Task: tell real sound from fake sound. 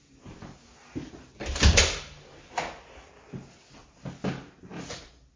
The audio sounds real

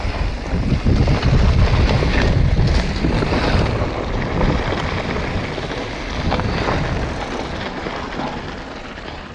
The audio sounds real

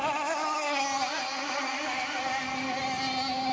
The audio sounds real